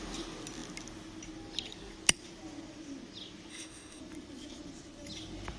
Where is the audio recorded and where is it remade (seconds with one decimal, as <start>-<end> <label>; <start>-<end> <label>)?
0.0-3.5 recorded; 3.5-4.0 remade; 4.0-5.6 recorded